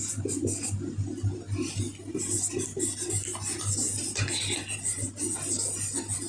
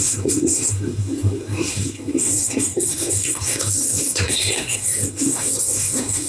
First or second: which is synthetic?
second